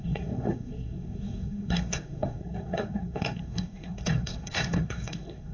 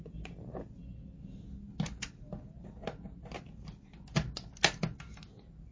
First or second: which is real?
second